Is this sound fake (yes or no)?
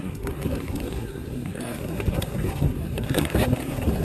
yes